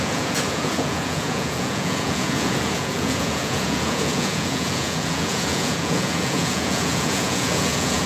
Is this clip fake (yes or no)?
yes